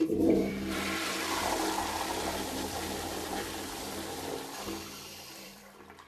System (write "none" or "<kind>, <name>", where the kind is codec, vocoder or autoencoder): vocoder, BigVGAN v2